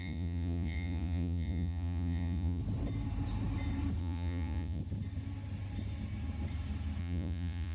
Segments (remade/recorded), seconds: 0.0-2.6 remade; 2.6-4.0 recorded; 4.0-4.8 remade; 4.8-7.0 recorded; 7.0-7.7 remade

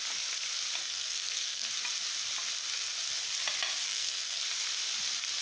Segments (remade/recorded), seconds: 0.0-0.8 recorded; 0.8-1.7 remade; 1.7-3.9 recorded; 3.9-4.4 remade; 4.4-5.4 recorded

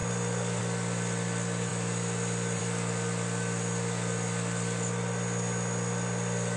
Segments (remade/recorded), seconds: 0.0-6.6 recorded